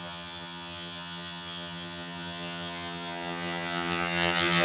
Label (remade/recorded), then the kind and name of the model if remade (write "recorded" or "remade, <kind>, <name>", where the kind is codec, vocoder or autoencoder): remade, vocoder, HiFi-GAN